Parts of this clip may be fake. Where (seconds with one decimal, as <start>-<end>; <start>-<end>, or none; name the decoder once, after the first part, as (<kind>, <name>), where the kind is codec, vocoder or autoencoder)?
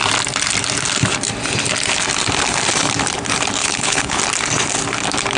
3.6-4.2 (codec, HILCodec)